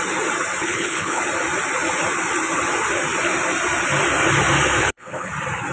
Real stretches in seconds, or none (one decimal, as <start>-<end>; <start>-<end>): 0.0-0.6; 1.2-4.8; 5.3-5.7